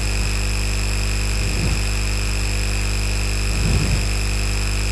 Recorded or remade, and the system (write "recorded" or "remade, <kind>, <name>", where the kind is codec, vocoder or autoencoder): recorded